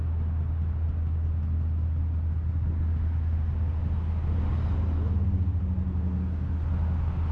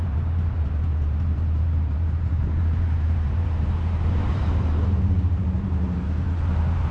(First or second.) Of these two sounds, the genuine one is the first